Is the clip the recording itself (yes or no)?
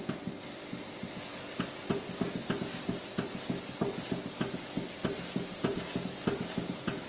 yes